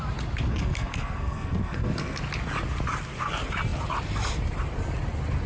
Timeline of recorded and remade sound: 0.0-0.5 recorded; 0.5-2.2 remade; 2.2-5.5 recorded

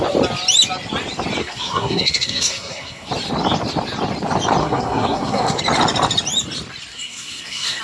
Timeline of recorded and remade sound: 0.0-1.4 recorded; 1.4-3.1 remade; 3.1-4.6 recorded; 4.6-5.6 remade; 5.6-6.9 recorded; 6.9-7.8 remade

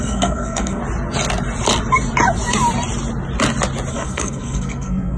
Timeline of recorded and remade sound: 0.0-0.8 remade; 0.8-3.9 recorded; 3.9-5.2 remade

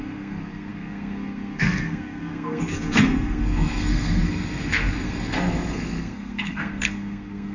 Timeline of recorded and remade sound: 0.0-7.5 remade

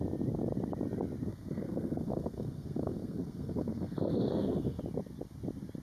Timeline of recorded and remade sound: 0.0-1.3 recorded; 1.3-4.8 remade; 4.8-5.8 recorded